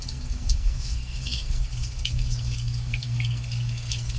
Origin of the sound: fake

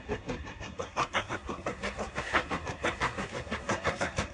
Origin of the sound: fake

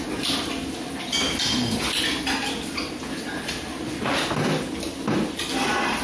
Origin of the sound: real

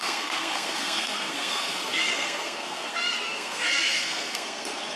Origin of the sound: fake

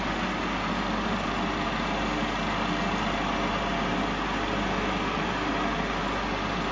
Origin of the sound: real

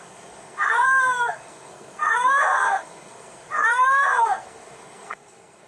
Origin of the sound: fake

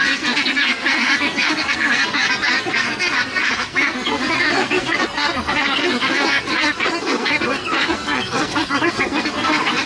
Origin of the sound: fake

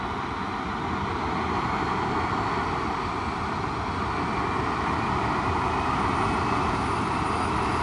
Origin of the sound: real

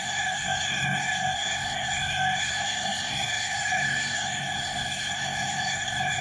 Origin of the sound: fake